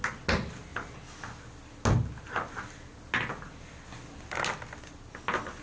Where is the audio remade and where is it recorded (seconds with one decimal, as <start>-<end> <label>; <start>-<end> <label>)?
0.0-5.6 recorded